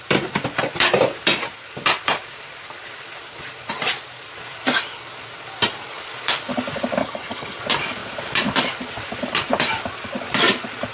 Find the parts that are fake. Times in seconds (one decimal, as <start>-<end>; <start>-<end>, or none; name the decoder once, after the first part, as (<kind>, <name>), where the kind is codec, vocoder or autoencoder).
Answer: 7.0-7.6 (vocoder, HiFi-GAN)